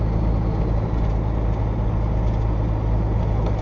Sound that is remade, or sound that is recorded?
recorded